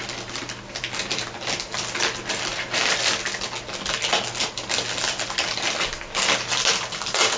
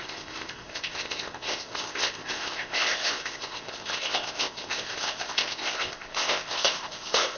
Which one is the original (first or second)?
first